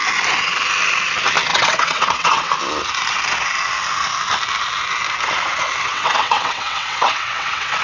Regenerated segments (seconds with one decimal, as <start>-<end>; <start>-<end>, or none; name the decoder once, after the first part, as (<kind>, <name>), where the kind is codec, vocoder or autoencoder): 1.5-2.5 (vocoder, WaveNeXt); 5.9-7.8